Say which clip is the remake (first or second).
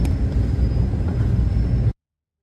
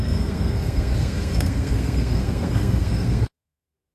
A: second